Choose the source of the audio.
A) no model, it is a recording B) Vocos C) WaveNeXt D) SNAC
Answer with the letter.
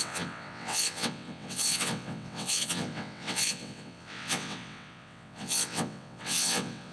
C